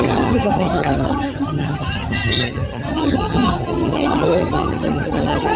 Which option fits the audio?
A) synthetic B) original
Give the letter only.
A